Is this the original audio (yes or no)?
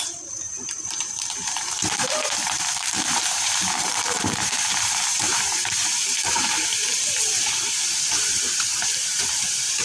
no